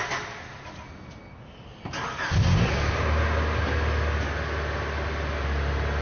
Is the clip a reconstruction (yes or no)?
no